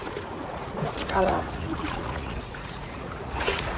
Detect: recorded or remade remade